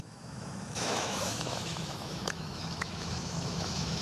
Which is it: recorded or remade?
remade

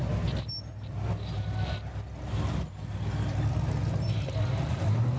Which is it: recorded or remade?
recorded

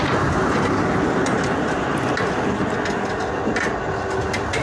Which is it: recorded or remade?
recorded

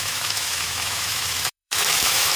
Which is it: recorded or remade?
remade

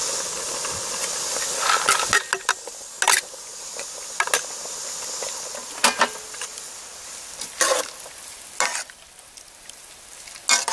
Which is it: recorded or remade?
recorded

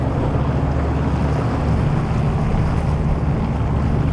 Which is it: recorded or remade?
recorded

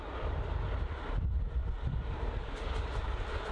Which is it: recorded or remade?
recorded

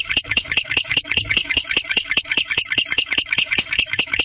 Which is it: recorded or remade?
remade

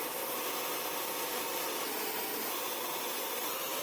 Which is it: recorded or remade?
recorded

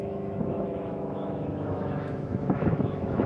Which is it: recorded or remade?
remade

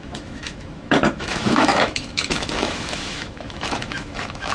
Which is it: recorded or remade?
remade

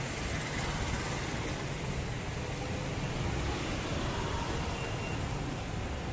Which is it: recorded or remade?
recorded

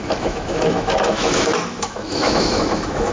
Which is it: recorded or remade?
remade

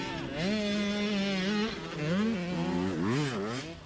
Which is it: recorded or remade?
recorded